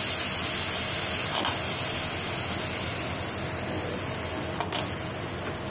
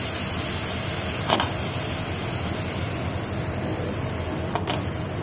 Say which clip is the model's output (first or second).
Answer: second